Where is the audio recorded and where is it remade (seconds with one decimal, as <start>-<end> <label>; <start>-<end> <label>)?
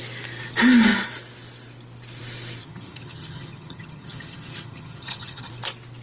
0.0-2.6 recorded; 2.6-5.5 remade; 5.5-6.0 recorded